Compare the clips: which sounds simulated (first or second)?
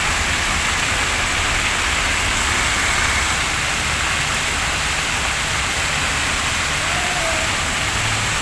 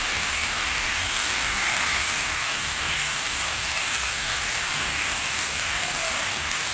second